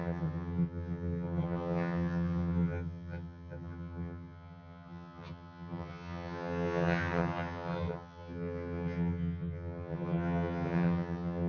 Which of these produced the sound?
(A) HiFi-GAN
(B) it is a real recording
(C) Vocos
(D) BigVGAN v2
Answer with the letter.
A